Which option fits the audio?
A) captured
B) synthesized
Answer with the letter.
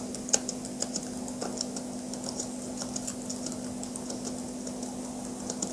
A